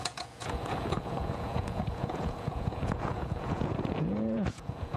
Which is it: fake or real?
fake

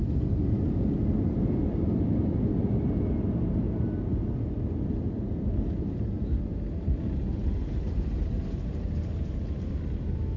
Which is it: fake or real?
real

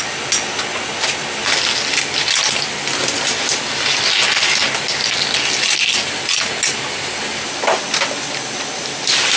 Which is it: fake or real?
real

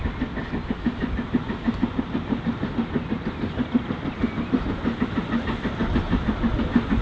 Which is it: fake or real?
real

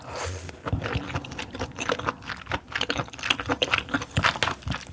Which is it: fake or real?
real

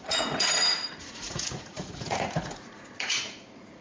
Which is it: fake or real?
fake